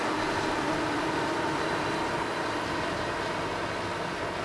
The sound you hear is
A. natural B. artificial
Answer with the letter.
A